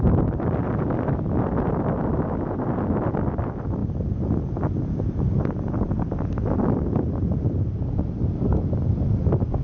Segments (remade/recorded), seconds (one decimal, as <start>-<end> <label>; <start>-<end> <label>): 0.0-3.8 recorded; 3.8-5.9 remade; 5.9-9.6 recorded